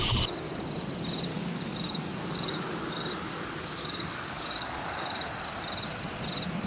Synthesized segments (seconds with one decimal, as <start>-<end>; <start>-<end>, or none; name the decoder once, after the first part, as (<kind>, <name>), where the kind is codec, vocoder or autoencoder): 1.3-5.3 (codec, DAC)